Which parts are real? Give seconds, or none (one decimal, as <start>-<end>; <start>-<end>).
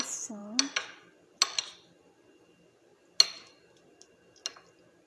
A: 0.0-5.1